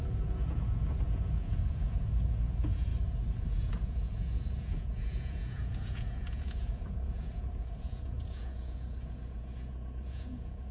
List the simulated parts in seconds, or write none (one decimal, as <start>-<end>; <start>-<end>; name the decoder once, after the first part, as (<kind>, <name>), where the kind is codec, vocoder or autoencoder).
0.0-2.9 (vocoder, Vocos); 3.4-10.7